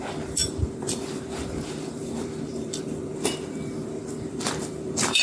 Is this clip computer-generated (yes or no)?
yes